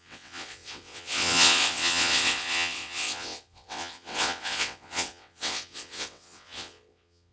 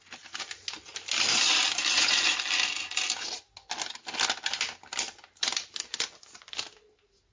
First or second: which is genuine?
second